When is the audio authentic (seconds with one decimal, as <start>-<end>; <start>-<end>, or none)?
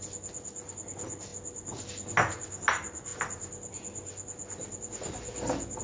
0.0-5.8